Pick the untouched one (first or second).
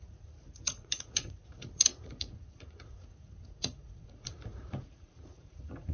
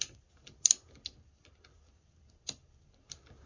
second